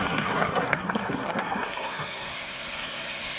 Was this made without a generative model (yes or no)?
no